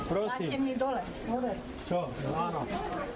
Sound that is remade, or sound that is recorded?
recorded